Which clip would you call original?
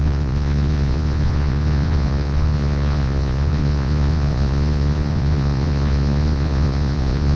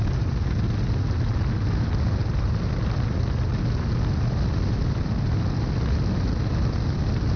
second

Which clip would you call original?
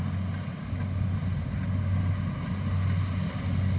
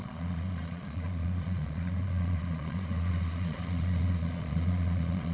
first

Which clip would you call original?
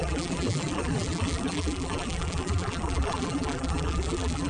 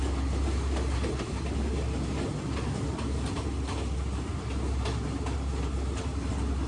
second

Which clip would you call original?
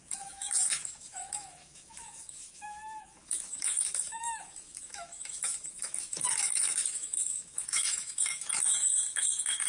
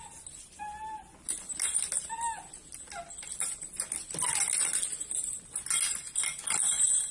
second